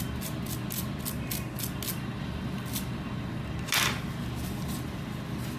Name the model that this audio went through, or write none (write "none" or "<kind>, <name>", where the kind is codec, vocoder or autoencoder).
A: none